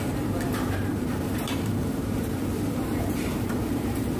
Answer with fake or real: fake